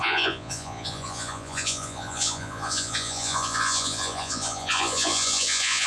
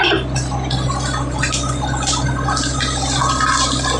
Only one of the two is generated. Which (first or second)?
first